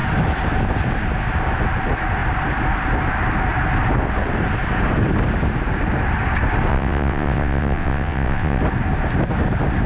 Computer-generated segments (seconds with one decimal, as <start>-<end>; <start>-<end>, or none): 6.7-8.6